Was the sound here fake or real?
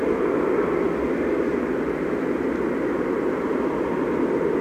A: real